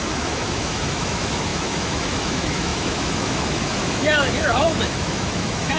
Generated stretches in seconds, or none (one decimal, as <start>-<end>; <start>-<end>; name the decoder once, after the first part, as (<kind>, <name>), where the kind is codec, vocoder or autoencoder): 0.0-5.8 (autoencoder, DAC-VAE)